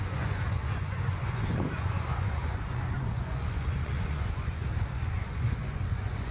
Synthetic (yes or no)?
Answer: yes